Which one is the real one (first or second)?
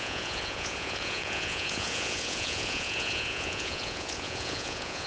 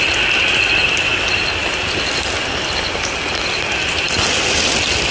second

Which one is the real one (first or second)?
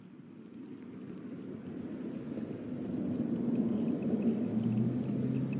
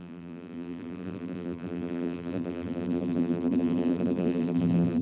first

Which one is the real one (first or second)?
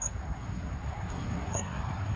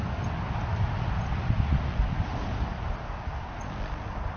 second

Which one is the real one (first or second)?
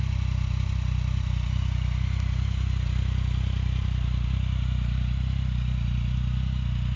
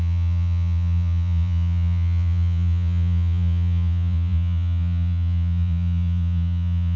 first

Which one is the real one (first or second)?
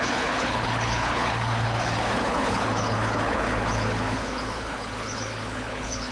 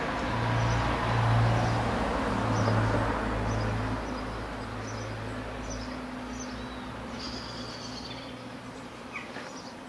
second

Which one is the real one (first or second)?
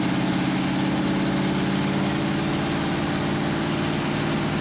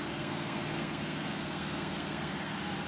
first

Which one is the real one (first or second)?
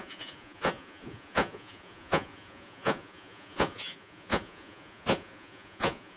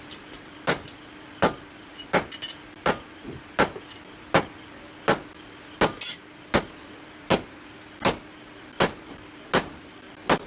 second